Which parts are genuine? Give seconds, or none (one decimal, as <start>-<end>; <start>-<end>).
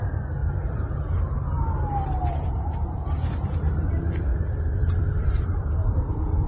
0.0-0.4; 3.9-4.3